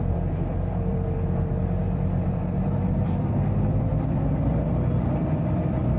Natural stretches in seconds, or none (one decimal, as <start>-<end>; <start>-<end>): none